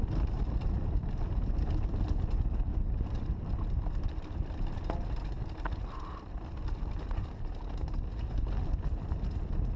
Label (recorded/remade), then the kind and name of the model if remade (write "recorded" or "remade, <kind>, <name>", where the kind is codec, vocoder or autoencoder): recorded